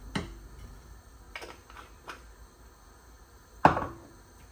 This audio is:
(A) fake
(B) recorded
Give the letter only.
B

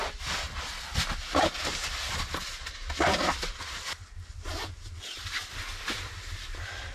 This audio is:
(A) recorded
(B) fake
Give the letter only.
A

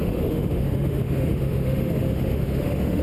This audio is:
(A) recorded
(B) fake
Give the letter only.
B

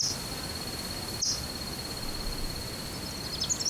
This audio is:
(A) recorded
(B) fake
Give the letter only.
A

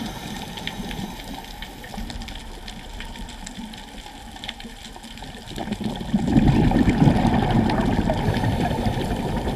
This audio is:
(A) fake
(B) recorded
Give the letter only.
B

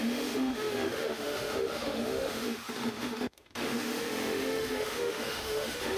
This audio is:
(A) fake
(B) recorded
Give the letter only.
A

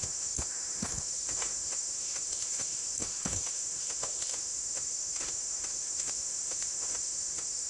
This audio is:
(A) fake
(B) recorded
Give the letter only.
A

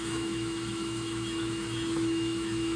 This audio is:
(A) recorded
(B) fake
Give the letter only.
B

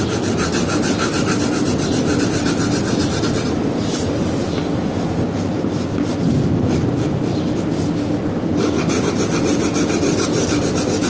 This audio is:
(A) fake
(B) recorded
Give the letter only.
B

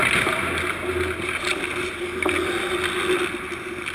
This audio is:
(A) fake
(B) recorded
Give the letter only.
B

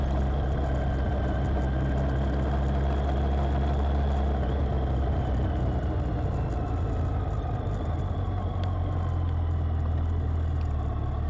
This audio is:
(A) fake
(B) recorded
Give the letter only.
B